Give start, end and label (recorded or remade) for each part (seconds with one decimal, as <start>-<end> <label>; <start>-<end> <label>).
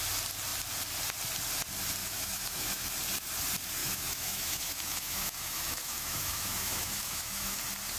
0.0-2.0 recorded; 2.0-2.9 remade; 2.9-3.8 recorded; 3.8-7.6 remade; 7.6-8.0 recorded